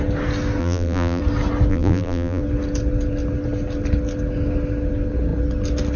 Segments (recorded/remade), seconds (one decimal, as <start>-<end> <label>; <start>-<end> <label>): 0.0-0.6 recorded; 0.6-1.2 remade; 1.2-1.7 recorded; 1.7-2.4 remade; 2.4-6.0 recorded